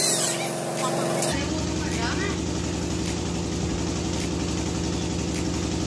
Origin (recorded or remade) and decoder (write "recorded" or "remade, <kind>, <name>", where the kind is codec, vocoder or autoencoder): recorded